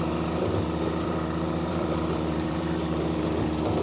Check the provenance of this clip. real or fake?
fake